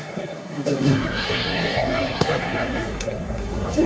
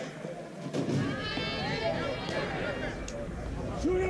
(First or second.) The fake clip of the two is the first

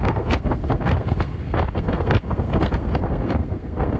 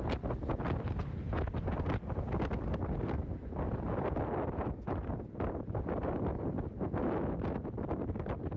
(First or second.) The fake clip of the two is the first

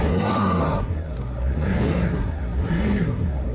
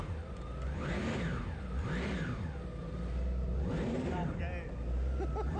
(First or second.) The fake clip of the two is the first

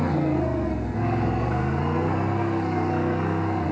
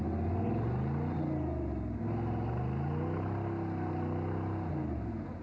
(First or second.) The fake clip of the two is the first